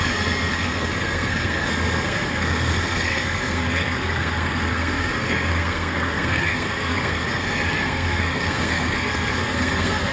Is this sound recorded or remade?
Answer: remade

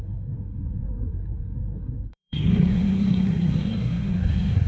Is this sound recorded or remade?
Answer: remade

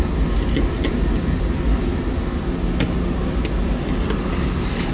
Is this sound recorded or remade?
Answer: recorded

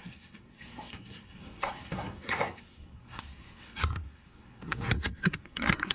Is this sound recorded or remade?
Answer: remade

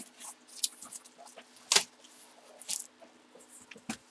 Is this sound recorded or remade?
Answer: recorded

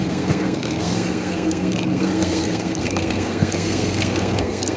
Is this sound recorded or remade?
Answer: remade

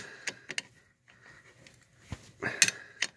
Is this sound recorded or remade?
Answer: recorded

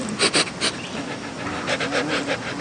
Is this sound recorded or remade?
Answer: recorded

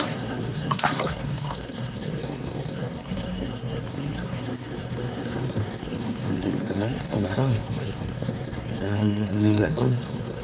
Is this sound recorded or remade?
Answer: remade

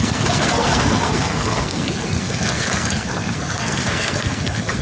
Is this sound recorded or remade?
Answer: remade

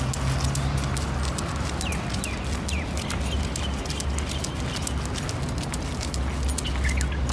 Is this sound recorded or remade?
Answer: recorded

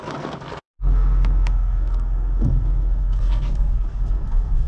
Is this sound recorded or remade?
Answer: remade